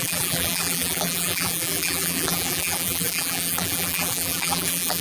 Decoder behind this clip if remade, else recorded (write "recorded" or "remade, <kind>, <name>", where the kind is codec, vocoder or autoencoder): remade, vocoder, BigVGAN v2